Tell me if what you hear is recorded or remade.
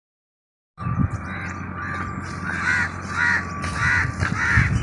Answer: recorded